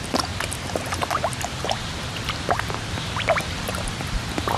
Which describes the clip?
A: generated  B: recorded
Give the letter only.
B